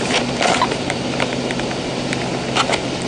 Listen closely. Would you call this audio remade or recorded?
recorded